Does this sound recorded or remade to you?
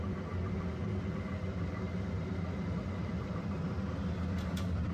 remade